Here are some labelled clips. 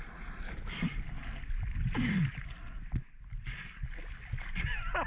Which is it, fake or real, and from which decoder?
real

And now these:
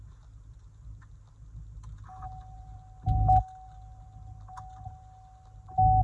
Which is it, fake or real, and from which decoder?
real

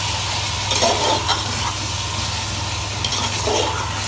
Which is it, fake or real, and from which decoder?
real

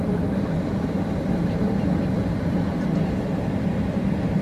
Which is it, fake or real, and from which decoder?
fake, vocoder, BigVGAN v2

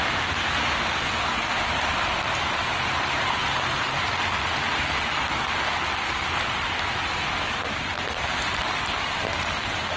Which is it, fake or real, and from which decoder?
real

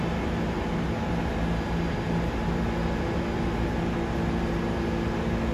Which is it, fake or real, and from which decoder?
real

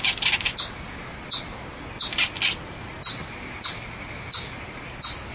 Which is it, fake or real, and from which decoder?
real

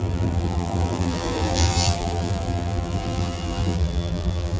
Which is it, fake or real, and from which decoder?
fake, vocoder, BigVGAN v2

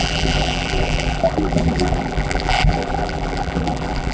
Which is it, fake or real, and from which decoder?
fake, vocoder, BigVGAN v2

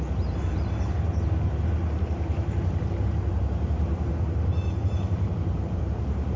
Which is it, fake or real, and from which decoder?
fake, vocoder, BigVGAN v2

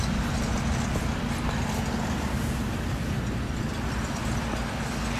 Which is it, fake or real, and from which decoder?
real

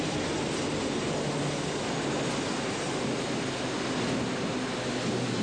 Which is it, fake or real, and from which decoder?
real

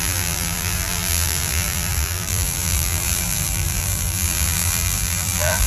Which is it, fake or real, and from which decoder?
fake, vocoder, BigVGAN v2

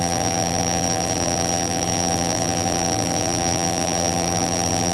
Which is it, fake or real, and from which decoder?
fake, vocoder, BigVGAN v2